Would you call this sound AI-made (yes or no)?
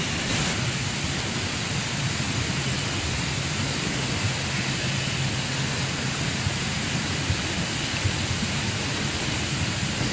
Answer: no